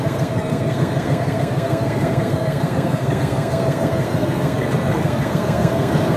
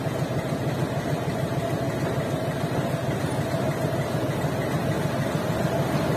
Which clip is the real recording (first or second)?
second